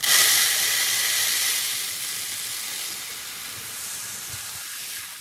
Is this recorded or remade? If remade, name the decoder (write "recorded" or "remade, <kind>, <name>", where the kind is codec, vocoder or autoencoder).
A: recorded